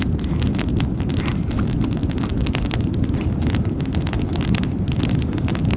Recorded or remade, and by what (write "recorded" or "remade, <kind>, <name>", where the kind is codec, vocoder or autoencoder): remade, vocoder, BigVGAN v2